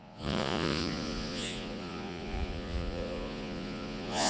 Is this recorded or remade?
remade